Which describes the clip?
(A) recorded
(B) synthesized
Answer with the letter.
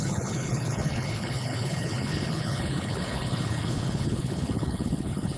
B